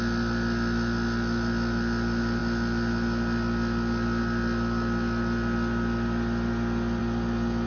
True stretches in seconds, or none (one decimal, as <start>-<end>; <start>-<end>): 0.0-7.7